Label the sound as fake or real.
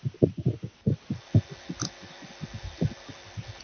real